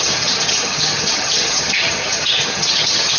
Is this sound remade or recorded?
remade